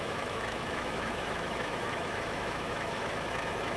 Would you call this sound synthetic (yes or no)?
yes